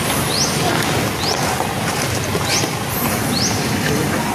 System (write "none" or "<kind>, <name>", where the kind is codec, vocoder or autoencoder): none